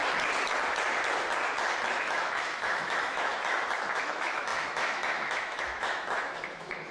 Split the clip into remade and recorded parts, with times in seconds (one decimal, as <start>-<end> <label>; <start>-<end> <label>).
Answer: 0.0-1.9 recorded; 1.9-3.3 remade; 3.3-3.9 recorded; 3.9-6.9 remade